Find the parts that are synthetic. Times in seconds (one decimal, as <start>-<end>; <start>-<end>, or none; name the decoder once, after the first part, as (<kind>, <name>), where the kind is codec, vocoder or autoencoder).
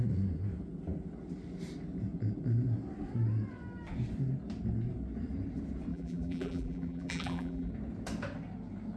5.9-7.7 (vocoder, BigVGAN v2)